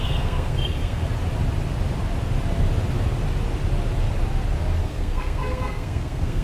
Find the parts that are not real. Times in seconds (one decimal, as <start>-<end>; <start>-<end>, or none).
0.0-1.0; 4.8-6.4